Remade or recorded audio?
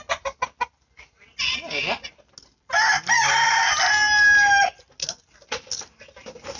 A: recorded